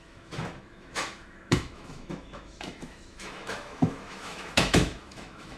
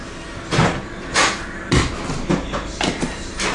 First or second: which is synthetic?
first